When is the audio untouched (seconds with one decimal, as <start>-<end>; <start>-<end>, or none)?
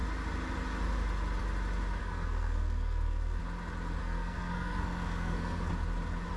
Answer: 0.0-2.0; 3.4-4.0; 5.7-6.4